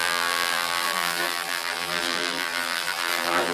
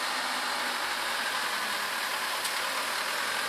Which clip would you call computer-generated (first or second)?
first